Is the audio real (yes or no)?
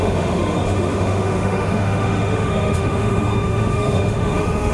no